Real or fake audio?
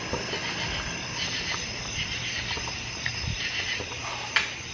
real